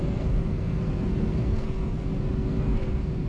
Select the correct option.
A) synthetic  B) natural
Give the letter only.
A